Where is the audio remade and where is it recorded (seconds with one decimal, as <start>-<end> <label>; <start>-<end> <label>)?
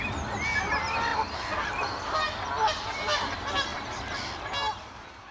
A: 0.0-3.7 recorded; 3.7-4.4 remade; 4.4-5.3 recorded